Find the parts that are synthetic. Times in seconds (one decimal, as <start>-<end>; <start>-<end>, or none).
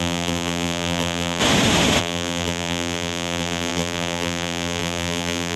0.0-1.4; 2.0-5.6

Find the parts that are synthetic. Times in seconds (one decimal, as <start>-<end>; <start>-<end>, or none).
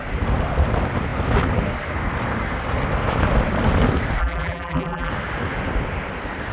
4.2-5.1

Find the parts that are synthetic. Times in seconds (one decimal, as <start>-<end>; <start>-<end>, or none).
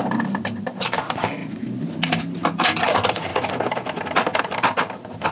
0.0-3.3; 4.4-5.3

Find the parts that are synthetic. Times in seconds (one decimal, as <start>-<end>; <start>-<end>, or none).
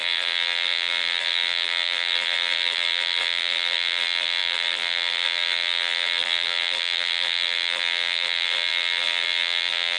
0.0-10.0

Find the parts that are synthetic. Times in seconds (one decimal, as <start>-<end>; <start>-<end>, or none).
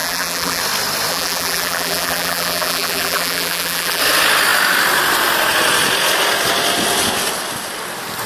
0.0-0.6; 1.1-4.0